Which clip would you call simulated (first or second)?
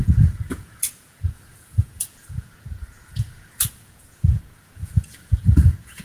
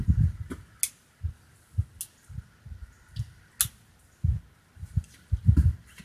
first